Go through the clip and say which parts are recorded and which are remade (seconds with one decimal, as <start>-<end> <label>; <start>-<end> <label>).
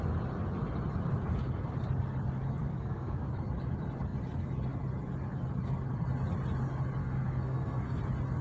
0.0-2.6 recorded; 2.6-3.3 remade; 3.3-7.0 recorded; 7.0-8.0 remade; 8.0-8.4 recorded